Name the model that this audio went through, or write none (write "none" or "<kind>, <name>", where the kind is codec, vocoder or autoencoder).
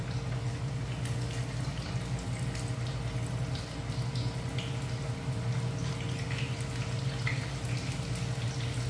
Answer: none